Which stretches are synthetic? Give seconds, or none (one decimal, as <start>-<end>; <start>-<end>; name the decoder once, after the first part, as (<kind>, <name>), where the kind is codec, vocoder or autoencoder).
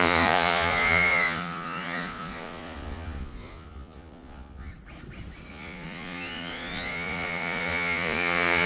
0.0-4.7 (vocoder, Vocos); 5.5-8.7